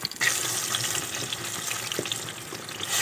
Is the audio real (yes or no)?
yes